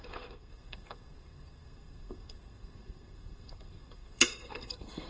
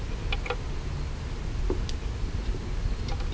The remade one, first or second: first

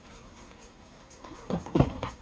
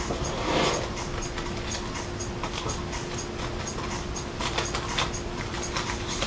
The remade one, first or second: first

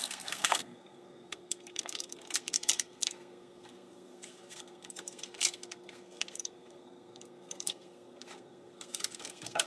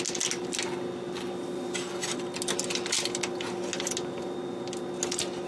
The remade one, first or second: first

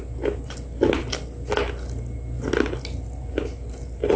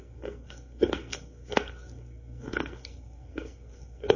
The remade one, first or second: second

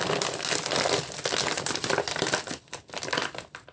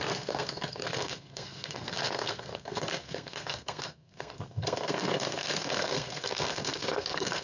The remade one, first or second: second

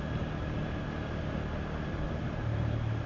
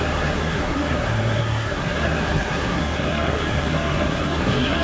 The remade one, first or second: second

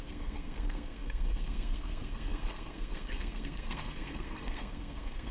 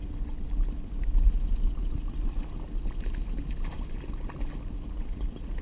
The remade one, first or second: first